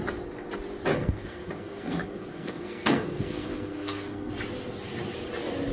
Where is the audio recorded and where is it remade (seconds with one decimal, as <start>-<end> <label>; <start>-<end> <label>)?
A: 0.0-0.9 recorded; 0.9-4.3 remade; 4.3-5.7 recorded

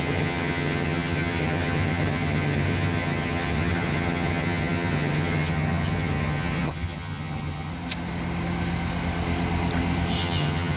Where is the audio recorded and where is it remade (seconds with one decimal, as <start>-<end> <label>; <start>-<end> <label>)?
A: 0.0-7.7 remade; 7.7-10.2 recorded; 10.2-10.8 remade

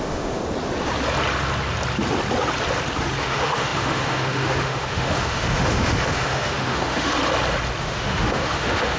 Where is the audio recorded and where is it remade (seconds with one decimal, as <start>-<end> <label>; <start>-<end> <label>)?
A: 0.0-0.4 remade; 0.4-3.2 recorded; 3.2-7.2 remade; 7.2-7.8 recorded; 7.8-9.0 remade